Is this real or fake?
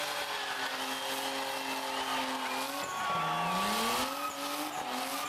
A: real